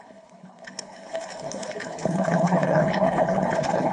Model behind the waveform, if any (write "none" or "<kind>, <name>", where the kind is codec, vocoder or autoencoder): codec, HILCodec